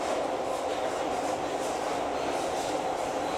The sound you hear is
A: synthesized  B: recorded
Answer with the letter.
B